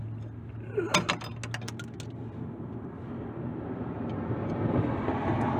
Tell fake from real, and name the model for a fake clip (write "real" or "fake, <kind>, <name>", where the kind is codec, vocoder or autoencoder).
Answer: real